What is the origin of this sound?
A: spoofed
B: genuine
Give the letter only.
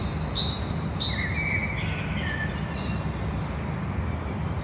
B